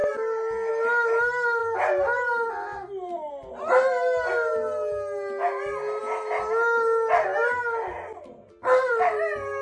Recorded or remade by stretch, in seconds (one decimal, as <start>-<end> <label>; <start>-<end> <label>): 0.0-9.6 recorded